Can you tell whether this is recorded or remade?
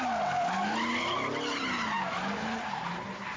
recorded